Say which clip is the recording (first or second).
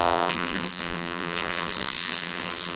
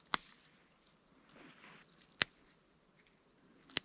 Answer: second